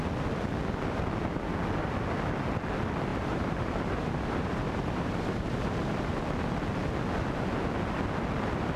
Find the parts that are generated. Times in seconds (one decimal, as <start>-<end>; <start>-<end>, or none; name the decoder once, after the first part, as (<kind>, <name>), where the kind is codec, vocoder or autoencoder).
3.1-6.2 (vocoder, BigVGAN v2)